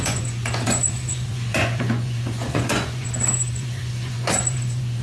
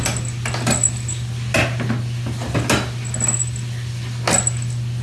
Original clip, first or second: second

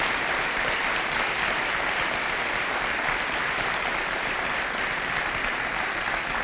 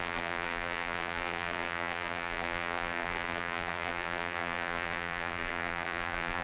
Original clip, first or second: first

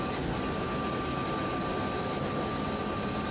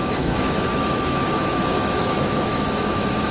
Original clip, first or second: first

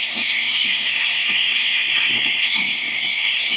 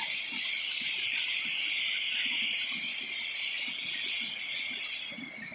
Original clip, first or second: second